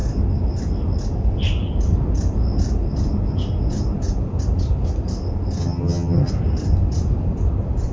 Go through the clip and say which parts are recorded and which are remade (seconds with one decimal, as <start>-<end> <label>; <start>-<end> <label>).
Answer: 0.0-5.6 recorded; 5.6-6.3 remade; 6.3-7.9 recorded